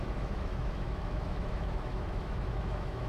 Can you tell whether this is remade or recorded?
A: remade